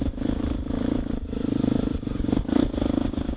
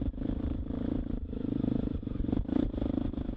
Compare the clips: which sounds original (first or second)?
first